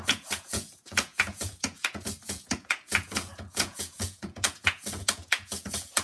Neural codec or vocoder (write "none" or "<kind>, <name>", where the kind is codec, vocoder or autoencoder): vocoder, Vocos